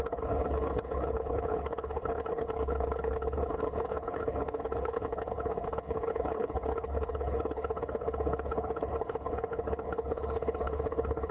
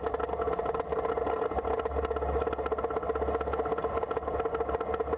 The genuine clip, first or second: second